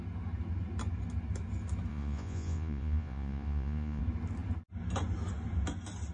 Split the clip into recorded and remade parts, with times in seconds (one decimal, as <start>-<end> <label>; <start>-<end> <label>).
0.0-1.9 recorded; 1.9-4.0 remade; 4.0-6.1 recorded